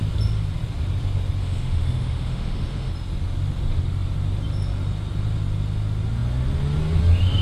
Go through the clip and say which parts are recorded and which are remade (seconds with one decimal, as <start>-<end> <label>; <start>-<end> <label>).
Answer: 0.0-1.4 recorded; 1.4-2.9 remade; 2.9-7.4 recorded